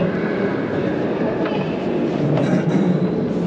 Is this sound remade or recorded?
recorded